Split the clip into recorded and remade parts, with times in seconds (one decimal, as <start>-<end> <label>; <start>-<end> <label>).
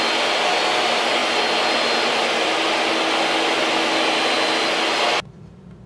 0.0-5.9 recorded